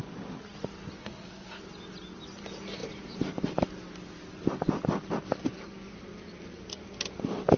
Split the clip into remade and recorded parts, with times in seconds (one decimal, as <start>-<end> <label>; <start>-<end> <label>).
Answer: 0.0-1.0 recorded; 1.0-1.6 remade; 1.6-7.6 recorded